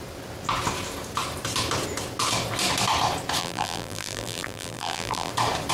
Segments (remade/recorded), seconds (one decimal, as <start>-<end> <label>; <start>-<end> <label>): 0.0-3.4 recorded; 3.4-5.3 remade; 5.3-5.7 recorded